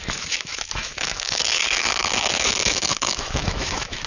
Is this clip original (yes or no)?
no